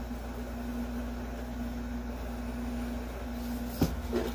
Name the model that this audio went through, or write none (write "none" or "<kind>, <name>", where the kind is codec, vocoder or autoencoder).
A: none